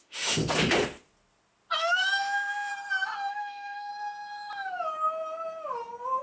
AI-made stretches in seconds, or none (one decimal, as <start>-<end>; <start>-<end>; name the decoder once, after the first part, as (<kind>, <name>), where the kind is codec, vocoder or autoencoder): 0.0-0.4 (autoencoder, DAC-VAE); 1.8-2.7; 3.3-3.9